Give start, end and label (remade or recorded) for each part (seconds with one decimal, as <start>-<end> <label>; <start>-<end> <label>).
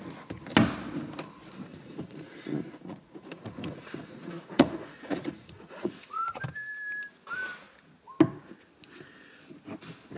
0.0-1.7 recorded; 1.7-6.4 remade; 6.4-10.2 recorded